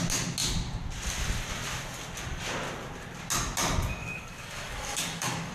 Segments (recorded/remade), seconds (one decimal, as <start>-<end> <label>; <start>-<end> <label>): 0.0-4.0 recorded; 4.0-5.5 remade